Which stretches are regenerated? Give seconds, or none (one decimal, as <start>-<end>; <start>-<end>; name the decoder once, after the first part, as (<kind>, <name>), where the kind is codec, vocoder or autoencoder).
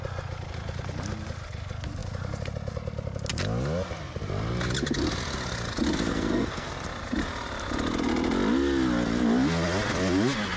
6.1-6.7 (codec, SNAC)